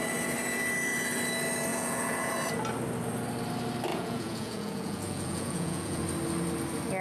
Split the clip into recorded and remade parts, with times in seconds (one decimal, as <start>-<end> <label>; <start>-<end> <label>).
0.0-1.7 recorded; 1.7-2.3 remade; 2.3-3.9 recorded; 3.9-6.0 remade; 6.0-7.0 recorded